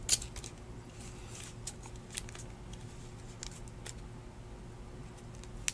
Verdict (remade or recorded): recorded